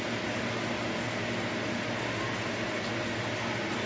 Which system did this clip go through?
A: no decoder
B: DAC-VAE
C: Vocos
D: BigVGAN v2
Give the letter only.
A